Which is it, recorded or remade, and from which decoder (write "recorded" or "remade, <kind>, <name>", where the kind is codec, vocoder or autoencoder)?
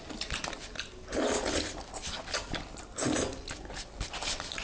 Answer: recorded